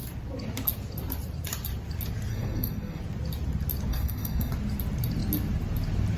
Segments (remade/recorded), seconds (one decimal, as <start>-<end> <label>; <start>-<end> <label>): 0.0-2.3 recorded; 2.3-3.0 remade; 3.0-3.9 recorded; 3.9-4.5 remade; 4.5-6.2 recorded

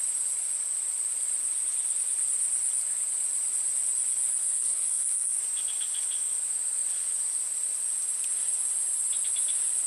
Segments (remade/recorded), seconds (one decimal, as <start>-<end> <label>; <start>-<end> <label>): 0.0-4.4 recorded; 4.4-5.4 remade; 5.4-9.9 recorded

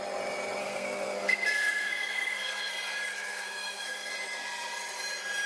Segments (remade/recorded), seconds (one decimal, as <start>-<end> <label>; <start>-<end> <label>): 0.0-0.6 recorded; 0.6-2.7 remade; 2.7-3.1 recorded; 3.1-4.1 remade; 4.1-5.5 recorded

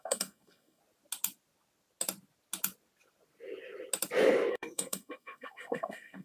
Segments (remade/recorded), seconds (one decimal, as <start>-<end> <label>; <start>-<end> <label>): 0.0-0.8 remade; 0.8-4.5 recorded; 4.5-6.2 remade

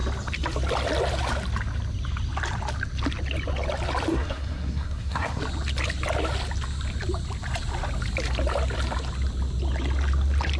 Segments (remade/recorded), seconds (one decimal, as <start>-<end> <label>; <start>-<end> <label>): 0.0-4.1 recorded; 4.1-5.4 remade; 5.4-10.6 recorded

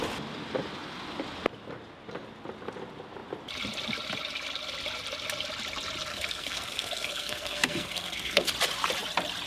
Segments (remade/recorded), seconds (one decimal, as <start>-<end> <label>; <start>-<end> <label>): 0.0-6.1 recorded; 6.1-8.5 remade; 8.5-9.5 recorded

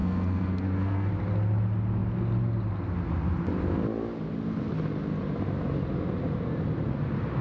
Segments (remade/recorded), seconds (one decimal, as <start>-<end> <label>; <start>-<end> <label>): 0.0-1.1 remade; 1.1-7.4 recorded